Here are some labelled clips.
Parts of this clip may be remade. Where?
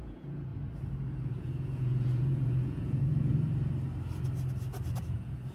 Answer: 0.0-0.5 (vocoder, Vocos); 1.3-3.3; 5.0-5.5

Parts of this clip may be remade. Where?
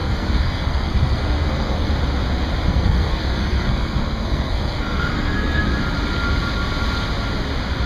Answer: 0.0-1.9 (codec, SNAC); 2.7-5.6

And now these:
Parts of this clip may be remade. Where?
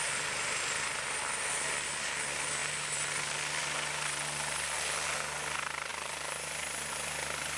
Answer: none